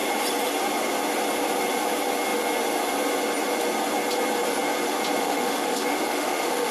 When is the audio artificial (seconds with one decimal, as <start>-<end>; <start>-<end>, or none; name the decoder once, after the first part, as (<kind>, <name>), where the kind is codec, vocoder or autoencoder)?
5.2-6.7 (autoencoder, DAC-VAE)